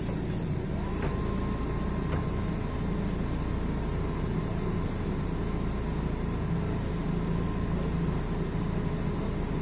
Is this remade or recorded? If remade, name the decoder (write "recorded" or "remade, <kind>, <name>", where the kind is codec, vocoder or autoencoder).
recorded